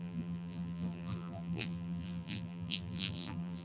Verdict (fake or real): fake